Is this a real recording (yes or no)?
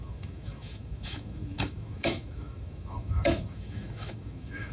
no